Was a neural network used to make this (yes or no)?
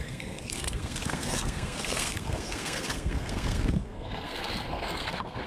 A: yes